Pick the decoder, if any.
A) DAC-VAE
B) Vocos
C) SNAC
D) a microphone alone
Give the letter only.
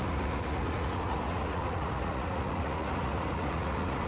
B